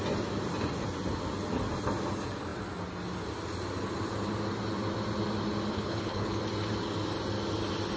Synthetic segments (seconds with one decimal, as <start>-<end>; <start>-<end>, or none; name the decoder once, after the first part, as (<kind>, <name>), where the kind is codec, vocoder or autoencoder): 5.7-6.4 (codec, HILCodec)